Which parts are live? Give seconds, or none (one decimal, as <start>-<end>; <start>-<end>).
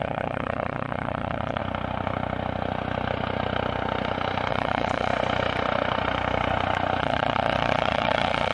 1.6-4.5; 5.1-7.0